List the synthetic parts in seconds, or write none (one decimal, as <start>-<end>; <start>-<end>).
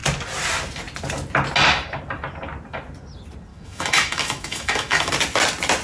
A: 3.5-5.1